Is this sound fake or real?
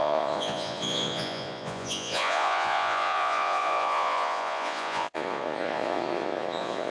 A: fake